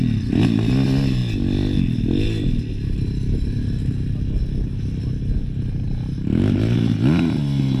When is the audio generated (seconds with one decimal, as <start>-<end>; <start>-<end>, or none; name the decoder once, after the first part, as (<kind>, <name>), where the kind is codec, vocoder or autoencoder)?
none